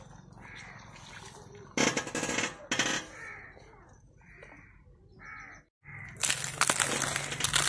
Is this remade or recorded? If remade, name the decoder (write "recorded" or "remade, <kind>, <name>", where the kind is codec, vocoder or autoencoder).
recorded